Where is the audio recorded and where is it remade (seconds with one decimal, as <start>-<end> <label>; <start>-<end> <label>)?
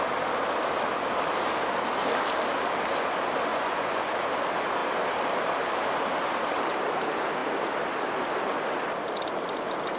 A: 0.0-3.5 recorded; 3.5-4.1 remade; 4.1-10.0 recorded